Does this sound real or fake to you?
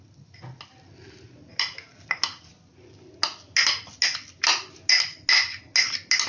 real